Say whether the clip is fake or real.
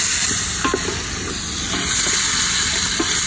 real